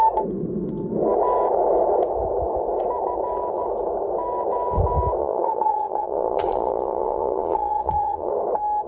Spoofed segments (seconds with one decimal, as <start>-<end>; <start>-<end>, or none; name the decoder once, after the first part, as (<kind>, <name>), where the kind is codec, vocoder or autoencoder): 5.2-8.3 (vocoder, Vocos)